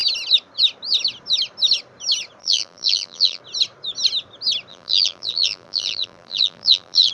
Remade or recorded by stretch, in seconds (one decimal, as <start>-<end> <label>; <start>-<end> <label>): 0.0-2.4 recorded; 2.4-3.4 remade; 3.4-4.7 recorded; 4.7-7.1 remade